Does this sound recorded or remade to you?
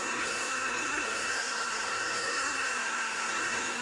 remade